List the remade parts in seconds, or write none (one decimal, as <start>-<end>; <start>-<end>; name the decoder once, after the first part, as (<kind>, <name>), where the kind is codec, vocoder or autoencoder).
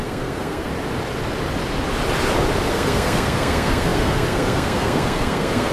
0.0-0.7 (codec, SNAC); 2.7-5.7